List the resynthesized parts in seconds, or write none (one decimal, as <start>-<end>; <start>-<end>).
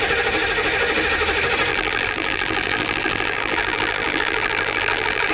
1.7-5.3